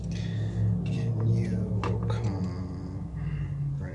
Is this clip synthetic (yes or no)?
no